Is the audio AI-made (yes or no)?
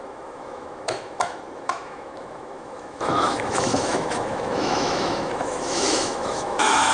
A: yes